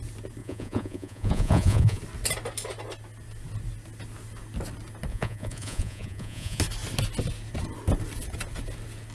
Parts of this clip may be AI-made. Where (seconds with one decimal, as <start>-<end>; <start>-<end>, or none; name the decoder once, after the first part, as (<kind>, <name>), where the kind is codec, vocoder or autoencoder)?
0.4-2.0 (vocoder, Vocos); 5.1-6.6